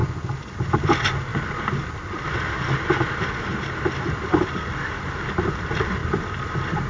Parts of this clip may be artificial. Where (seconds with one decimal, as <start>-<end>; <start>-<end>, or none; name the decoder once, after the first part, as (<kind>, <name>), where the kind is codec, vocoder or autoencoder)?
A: 1.3-2.3 (vocoder, BigVGAN v2); 3.5-5.3; 6.0-6.9